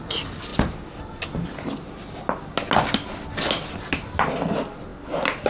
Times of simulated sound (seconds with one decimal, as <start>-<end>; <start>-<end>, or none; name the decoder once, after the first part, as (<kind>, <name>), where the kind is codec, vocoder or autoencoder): none